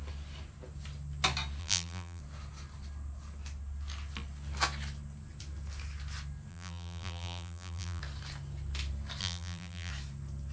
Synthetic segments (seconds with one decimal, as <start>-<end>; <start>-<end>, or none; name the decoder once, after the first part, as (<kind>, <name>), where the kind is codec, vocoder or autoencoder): 1.6-2.2 (vocoder, BigVGAN v2); 6.5-8.0; 9.2-9.9